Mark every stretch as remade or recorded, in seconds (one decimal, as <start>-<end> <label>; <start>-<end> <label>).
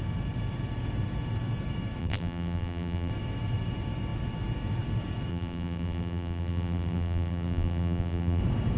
0.0-2.0 recorded; 2.0-3.1 remade; 3.1-5.3 recorded; 5.3-8.4 remade; 8.4-8.8 recorded